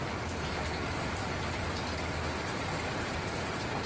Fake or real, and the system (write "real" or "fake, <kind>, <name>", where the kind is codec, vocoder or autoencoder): real